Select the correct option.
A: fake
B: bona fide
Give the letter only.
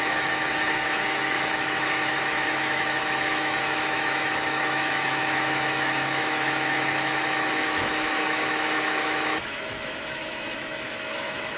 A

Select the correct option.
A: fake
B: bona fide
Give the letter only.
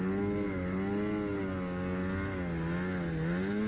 B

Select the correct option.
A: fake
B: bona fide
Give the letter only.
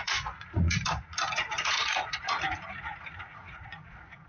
A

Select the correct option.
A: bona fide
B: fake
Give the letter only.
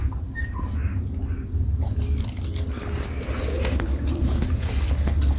A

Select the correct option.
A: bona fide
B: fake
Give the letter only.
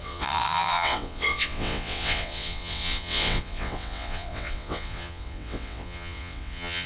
B